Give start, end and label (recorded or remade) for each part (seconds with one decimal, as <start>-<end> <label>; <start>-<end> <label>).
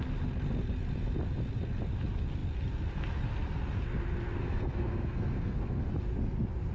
0.0-4.4 recorded; 4.4-5.9 remade; 5.9-6.7 recorded